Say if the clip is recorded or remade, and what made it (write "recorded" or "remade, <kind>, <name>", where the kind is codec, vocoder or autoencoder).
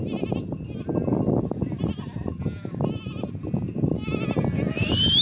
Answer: recorded